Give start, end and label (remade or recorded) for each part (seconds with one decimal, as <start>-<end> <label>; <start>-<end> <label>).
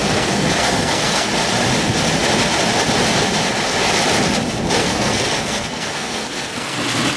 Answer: 0.0-1.3 remade; 1.3-4.8 recorded; 4.8-6.8 remade; 6.8-7.2 recorded